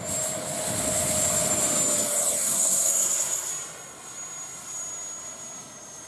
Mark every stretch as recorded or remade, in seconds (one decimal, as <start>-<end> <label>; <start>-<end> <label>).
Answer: 0.0-2.4 recorded; 2.4-3.5 remade; 3.5-6.1 recorded